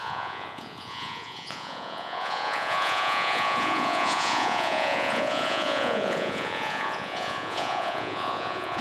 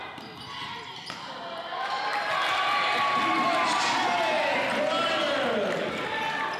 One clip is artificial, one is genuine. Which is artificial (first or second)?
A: first